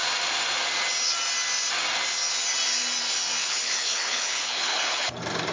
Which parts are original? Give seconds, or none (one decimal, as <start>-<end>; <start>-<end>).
0.0-3.4; 5.1-5.5